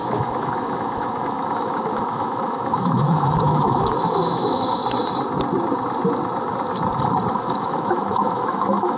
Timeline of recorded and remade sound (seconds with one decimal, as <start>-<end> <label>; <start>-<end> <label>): 0.0-4.8 remade; 4.8-7.3 recorded; 7.3-9.0 remade